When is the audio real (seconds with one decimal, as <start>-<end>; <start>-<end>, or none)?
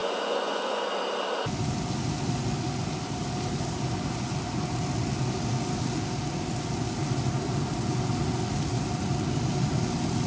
1.0-10.3